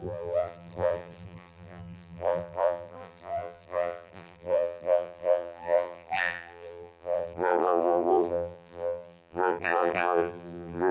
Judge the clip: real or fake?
fake